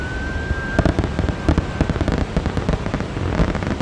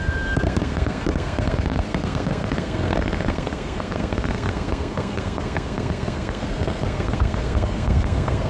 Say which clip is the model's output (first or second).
second